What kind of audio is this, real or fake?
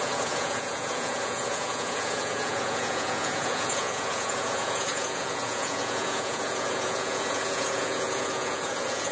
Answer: fake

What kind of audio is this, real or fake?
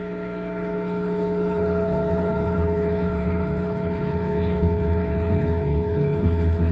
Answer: fake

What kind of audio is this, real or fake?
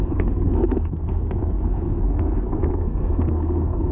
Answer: fake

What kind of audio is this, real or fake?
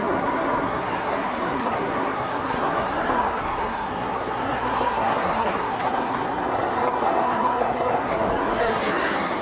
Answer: fake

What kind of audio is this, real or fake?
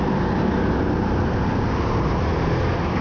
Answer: real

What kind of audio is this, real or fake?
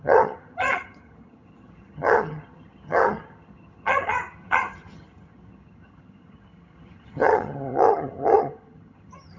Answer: fake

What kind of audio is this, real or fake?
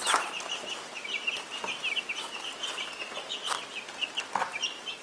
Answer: real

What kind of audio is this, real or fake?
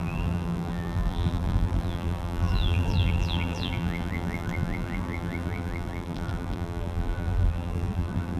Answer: fake